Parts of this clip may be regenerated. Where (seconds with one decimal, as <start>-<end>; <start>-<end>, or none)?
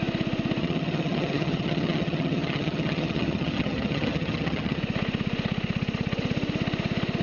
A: 0.6-4.8